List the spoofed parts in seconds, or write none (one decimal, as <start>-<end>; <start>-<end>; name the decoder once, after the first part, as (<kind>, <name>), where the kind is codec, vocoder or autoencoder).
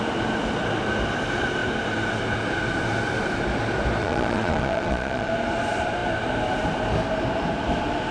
4.0-5.3 (vocoder, Vocos)